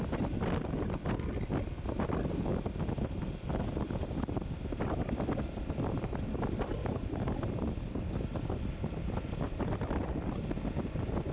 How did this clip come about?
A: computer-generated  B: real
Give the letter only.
B